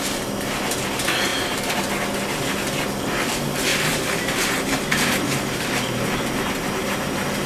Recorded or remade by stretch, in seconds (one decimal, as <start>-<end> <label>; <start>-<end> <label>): 0.0-1.3 recorded; 1.3-1.9 remade; 1.9-3.7 recorded; 3.7-5.6 remade; 5.6-7.5 recorded